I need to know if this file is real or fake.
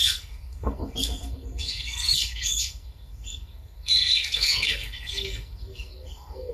fake